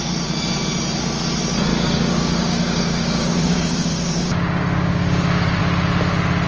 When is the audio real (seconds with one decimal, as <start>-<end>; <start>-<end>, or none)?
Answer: 0.0-1.7; 5.6-6.5